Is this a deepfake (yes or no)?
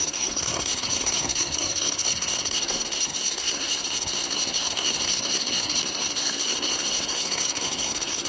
yes